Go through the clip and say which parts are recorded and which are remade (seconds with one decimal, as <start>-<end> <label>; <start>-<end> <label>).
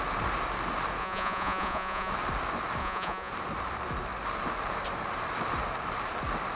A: 0.0-1.0 recorded; 1.0-2.1 remade; 2.1-2.8 recorded; 2.8-3.3 remade; 3.3-6.6 recorded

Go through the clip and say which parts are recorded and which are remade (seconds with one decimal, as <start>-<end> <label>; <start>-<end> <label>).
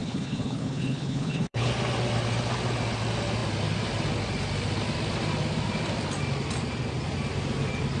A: 0.0-1.7 remade; 1.7-8.0 recorded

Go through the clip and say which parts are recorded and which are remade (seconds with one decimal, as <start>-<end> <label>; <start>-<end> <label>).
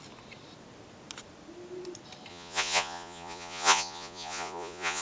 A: 0.0-2.3 recorded; 2.3-5.0 remade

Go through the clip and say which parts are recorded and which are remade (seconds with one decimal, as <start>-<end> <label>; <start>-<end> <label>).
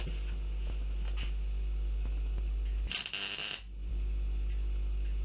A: 0.0-3.4 recorded; 3.4-3.9 remade; 3.9-5.2 recorded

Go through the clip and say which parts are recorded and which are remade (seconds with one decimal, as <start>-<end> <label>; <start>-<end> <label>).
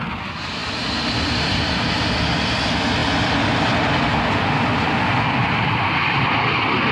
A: 0.0-6.9 recorded